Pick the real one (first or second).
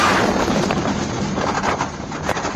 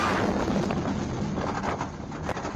second